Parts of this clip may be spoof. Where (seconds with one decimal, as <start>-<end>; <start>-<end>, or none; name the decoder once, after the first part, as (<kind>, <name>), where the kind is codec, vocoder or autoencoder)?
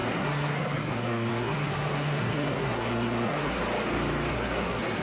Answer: 0.0-3.6 (codec, SNAC); 4.3-5.0